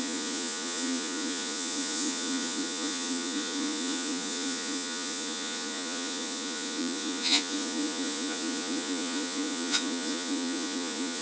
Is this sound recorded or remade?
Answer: remade